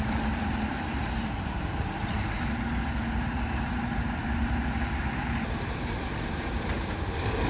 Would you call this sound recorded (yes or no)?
no